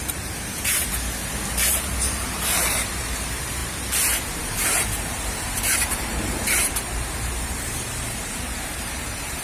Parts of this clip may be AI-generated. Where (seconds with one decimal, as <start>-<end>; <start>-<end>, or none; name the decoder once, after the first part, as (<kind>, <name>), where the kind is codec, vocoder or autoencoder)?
0.0-1.2 (vocoder, BigVGAN v2); 1.7-3.6; 4.4-9.4